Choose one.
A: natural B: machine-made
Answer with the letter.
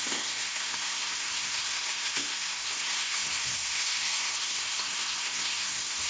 B